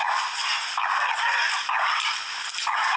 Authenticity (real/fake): real